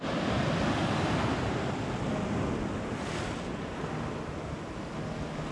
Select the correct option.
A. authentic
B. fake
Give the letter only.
A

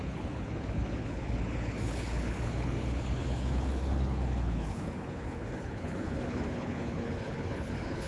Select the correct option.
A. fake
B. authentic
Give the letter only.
A